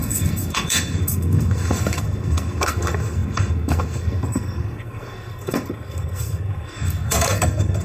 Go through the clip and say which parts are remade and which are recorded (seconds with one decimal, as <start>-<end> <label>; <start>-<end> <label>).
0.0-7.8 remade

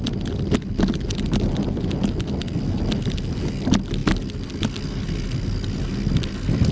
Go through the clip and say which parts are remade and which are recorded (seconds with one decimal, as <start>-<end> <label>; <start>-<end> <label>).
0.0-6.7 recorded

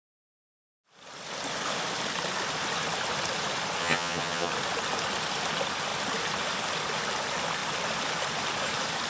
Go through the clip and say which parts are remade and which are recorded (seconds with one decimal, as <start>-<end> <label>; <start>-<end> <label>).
0.0-3.8 recorded; 3.8-4.5 remade; 4.5-9.1 recorded